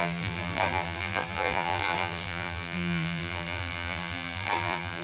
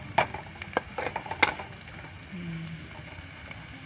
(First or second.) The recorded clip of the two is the second